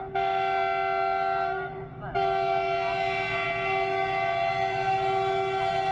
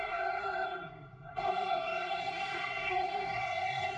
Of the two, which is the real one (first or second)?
first